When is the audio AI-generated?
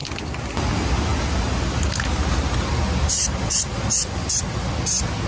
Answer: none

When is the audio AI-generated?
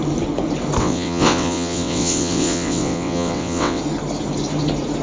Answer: 0.8-3.8